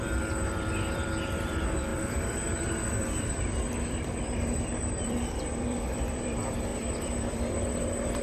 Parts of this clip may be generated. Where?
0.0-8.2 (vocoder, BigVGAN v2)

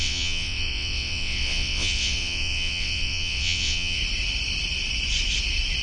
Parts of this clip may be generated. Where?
0.0-4.0 (vocoder, WaveNeXt)

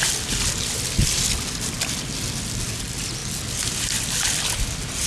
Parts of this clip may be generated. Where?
none

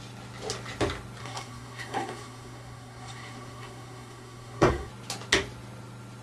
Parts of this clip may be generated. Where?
1.2-4.9 (codec, SNAC)

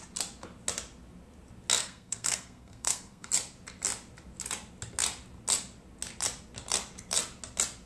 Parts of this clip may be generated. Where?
1.8-3.3 (codec, SNAC)

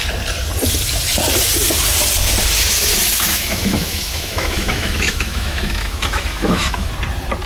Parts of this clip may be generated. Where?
3.1-6.9 (autoencoder, DAC-VAE)

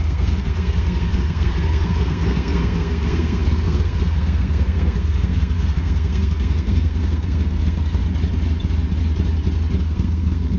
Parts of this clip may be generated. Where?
0.0-8.0 (codec, SNAC); 9.8-10.6